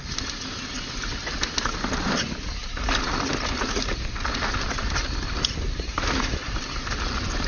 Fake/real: real